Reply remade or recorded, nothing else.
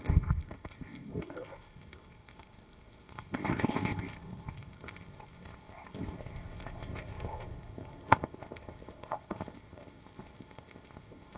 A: remade